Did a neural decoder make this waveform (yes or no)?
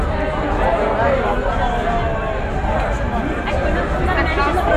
no